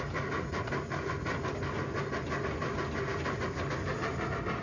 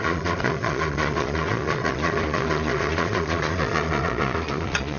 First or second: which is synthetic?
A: second